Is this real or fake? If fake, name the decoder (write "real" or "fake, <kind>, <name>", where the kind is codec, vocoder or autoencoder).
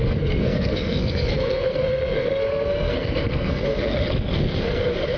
fake, codec, SNAC